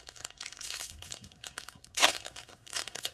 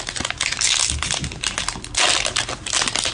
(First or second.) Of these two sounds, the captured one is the second